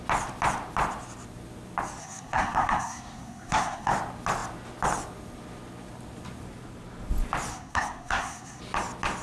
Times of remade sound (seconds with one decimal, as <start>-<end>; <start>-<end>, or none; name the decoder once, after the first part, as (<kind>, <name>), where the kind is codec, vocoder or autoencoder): 2.0-3.9 (codec, SNAC); 7.5-8.6